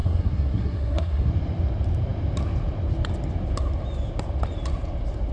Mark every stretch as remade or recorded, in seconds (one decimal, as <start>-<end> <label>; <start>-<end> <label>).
0.0-1.3 remade; 1.3-5.3 recorded